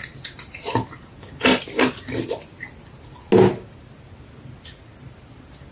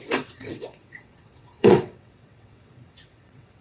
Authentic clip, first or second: first